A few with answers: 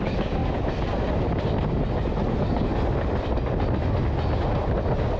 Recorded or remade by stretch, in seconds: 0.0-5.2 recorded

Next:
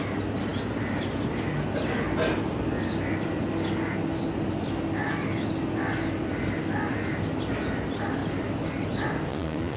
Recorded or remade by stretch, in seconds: 0.0-9.3 recorded; 9.3-9.8 remade